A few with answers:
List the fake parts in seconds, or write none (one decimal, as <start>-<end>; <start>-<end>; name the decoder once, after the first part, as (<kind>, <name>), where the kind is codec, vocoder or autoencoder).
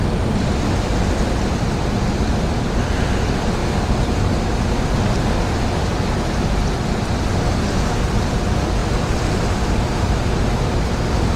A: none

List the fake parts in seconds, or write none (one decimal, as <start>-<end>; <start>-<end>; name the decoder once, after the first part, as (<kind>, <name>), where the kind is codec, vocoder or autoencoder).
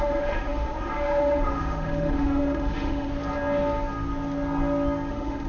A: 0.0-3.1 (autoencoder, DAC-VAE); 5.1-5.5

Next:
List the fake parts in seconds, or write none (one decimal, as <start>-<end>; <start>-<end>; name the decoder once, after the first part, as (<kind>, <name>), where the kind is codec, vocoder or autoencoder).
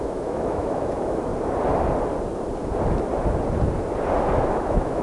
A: 0.0-1.3 (autoencoder, DAC-VAE); 4.3-5.0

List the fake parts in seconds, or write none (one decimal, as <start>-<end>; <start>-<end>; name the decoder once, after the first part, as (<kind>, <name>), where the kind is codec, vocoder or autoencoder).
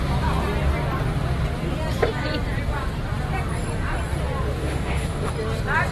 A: 4.6-5.3 (autoencoder, DAC-VAE)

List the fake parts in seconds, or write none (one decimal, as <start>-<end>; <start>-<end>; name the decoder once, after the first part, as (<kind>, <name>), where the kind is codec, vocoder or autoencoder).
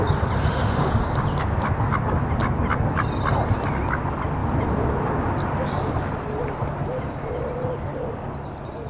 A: 0.4-0.9 (autoencoder, DAC-VAE)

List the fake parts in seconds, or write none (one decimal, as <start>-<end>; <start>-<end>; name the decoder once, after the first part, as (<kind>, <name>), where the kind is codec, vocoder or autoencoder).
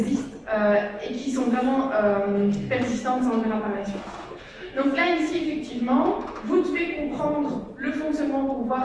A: 1.2-1.8 (autoencoder, DAC-VAE); 2.9-7.2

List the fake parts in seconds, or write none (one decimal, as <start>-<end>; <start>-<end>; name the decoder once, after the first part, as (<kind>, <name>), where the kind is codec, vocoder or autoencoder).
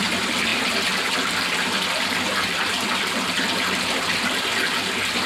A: none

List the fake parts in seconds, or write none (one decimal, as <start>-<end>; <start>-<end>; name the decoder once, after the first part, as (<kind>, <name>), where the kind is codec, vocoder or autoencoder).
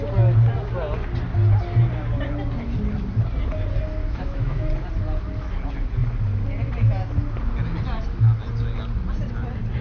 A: 4.0-4.7 (autoencoder, DAC-VAE)